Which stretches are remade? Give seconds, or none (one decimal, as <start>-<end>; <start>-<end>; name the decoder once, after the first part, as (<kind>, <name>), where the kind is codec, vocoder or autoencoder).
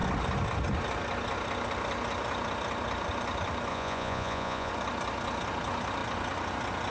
3.7-4.7 (vocoder, Vocos)